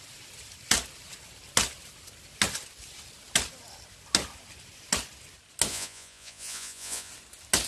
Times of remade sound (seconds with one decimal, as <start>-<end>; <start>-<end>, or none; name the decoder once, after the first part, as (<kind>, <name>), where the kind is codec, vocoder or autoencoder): 5.7-7.1 (vocoder, Vocos)

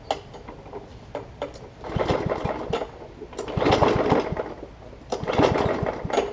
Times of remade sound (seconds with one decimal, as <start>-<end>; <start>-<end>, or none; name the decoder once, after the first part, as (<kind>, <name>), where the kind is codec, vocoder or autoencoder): 0.9-2.5 (vocoder, BigVGAN v2)